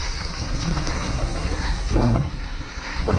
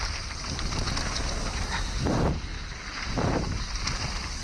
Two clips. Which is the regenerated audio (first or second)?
first